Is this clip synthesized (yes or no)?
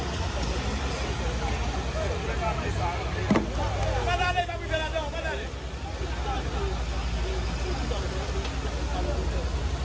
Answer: no